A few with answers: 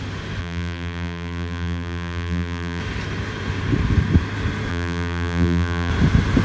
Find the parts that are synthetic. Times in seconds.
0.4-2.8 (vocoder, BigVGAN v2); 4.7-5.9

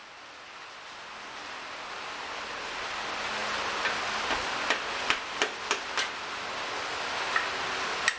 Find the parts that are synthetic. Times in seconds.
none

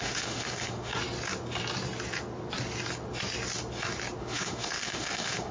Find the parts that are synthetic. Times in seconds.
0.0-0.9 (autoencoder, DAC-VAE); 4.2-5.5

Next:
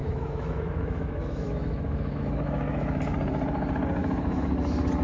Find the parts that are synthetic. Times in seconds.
0.0-3.0 (autoencoder, DAC-VAE); 4.0-4.5

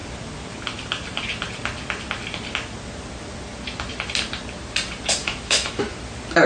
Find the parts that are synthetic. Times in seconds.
5.2-5.8 (autoencoder, DAC-VAE)

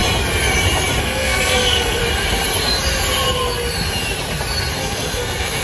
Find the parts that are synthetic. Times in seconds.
1.0-2.0 (codec, SNAC); 4.8-5.6

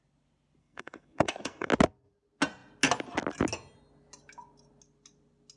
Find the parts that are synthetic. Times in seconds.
0.6-1.7 (codec, SNAC)

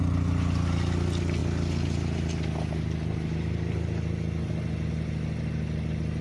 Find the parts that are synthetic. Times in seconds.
none